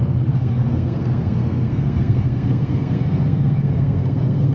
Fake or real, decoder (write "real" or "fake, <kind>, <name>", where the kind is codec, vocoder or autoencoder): fake, codec, SNAC